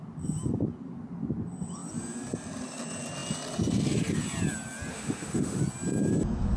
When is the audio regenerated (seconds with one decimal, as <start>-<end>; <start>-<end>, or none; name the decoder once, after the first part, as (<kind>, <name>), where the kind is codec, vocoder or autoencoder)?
4.9-5.6 (autoencoder, DAC-VAE)